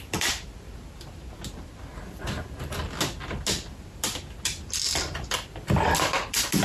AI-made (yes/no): no